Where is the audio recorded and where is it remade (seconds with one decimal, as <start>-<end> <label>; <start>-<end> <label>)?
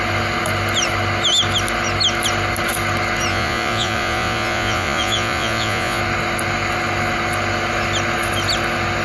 0.0-3.3 recorded; 3.3-6.0 remade; 6.0-9.0 recorded